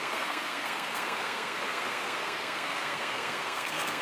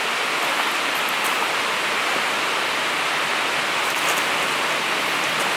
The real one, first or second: second